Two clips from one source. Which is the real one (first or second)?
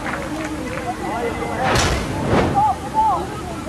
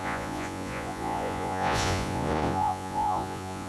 first